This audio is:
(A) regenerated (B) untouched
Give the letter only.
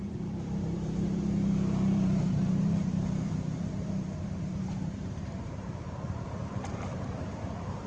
A